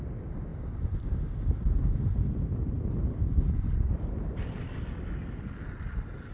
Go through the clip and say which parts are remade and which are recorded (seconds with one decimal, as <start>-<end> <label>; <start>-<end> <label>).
0.0-6.3 recorded